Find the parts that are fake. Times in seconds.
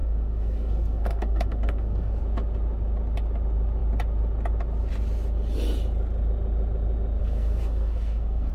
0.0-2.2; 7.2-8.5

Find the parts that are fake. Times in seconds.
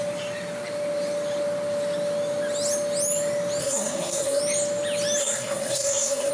3.6-4.4; 5.2-6.3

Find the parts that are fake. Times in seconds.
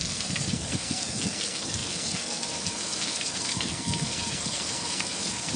0.0-5.6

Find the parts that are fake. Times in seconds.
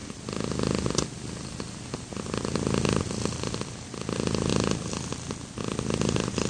none